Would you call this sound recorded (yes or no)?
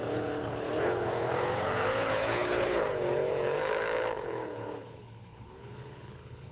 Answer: no